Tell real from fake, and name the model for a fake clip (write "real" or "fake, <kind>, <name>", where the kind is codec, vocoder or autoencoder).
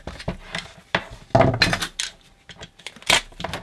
real